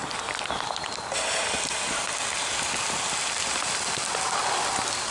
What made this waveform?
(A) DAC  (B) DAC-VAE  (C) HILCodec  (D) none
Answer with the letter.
D